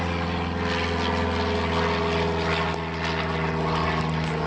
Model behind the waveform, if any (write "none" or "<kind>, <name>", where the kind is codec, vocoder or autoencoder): none